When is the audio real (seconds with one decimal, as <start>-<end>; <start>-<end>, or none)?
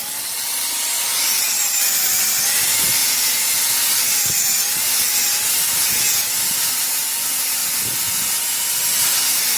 0.0-3.0; 3.9-7.6; 8.3-9.6